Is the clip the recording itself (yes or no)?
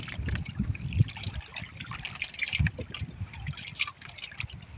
yes